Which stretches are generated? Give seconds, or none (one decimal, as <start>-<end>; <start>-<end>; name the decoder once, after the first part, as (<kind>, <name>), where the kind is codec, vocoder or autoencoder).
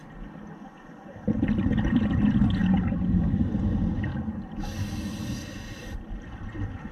5.8-6.5 (vocoder, BigVGAN v2)